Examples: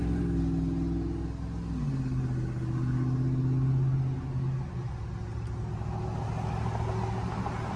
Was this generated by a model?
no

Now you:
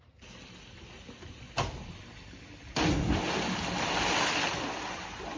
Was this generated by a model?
no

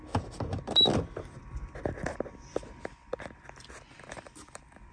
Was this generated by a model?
yes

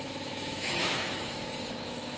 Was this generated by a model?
yes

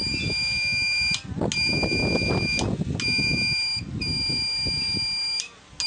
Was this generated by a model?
no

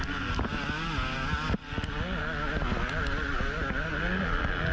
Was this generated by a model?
no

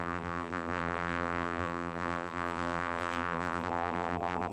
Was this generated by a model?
yes